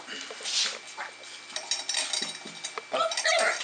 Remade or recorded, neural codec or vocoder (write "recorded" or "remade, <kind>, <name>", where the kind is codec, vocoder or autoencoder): recorded